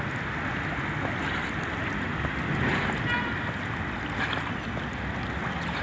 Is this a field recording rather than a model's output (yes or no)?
yes